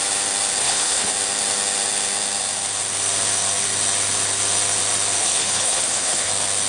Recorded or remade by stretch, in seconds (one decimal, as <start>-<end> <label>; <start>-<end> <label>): 0.0-0.6 recorded; 0.6-1.1 remade; 1.1-5.2 recorded; 5.2-6.3 remade; 6.3-6.7 recorded